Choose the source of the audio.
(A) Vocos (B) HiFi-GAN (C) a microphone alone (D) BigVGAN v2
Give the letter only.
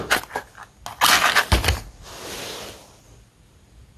C